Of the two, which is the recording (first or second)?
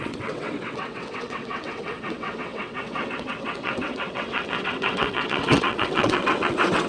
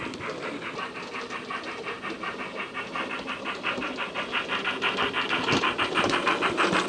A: second